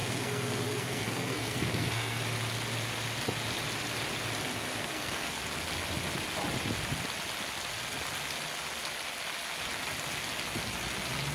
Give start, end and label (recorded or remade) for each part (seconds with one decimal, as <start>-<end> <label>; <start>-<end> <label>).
0.0-2.2 remade; 2.2-4.7 recorded; 4.7-5.4 remade; 5.4-11.3 recorded